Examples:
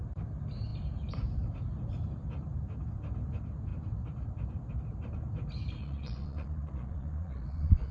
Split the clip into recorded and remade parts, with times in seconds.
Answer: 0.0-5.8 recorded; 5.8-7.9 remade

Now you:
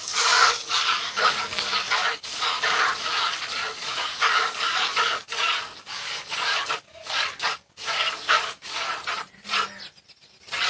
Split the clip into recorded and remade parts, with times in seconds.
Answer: 0.0-8.9 remade; 8.9-10.7 recorded

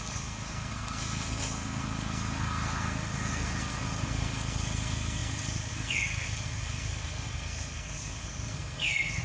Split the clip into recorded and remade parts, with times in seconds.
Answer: 0.0-9.2 remade

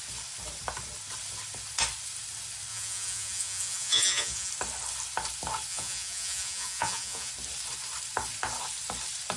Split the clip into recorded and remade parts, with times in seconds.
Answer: 0.0-2.7 recorded; 2.7-4.5 remade; 4.5-5.7 recorded; 5.7-7.3 remade; 7.3-9.4 recorded

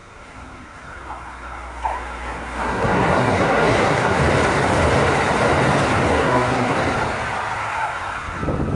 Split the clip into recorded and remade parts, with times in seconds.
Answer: 0.0-4.2 remade; 4.2-6.1 recorded; 6.1-6.8 remade; 6.8-7.6 recorded; 7.6-8.4 remade; 8.4-8.8 recorded